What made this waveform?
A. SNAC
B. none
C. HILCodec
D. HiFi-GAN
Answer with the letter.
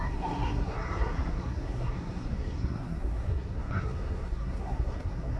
A